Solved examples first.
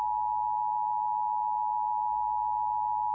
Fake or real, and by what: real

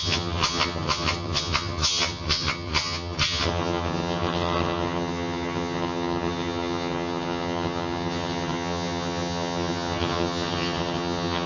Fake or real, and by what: fake, vocoder, HiFi-GAN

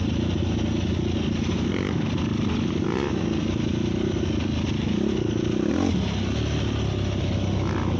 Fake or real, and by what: real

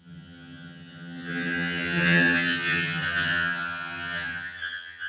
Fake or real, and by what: fake, vocoder, HiFi-GAN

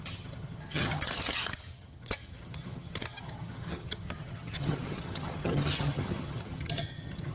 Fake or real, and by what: fake, vocoder, HiFi-GAN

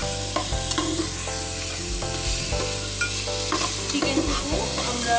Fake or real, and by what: real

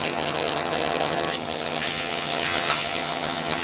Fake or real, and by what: fake, vocoder, HiFi-GAN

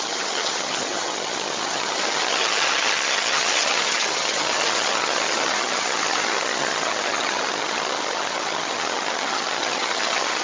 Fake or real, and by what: fake, vocoder, HiFi-GAN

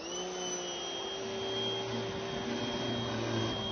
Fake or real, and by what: real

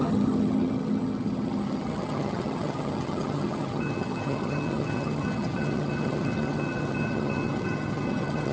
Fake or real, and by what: fake, vocoder, HiFi-GAN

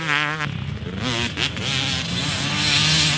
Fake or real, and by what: real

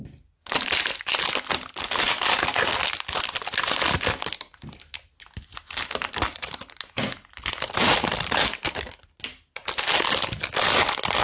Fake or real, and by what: real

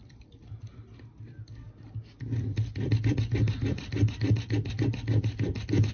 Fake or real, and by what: real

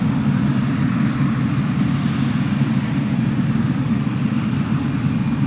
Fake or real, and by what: real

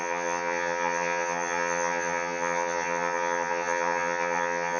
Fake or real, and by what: fake, vocoder, HiFi-GAN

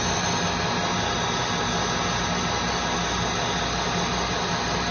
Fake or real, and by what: real